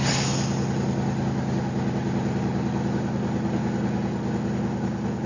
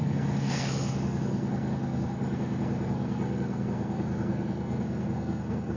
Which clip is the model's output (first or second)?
second